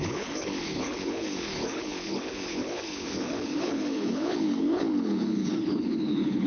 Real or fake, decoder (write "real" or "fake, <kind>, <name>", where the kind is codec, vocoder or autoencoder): fake, codec, HILCodec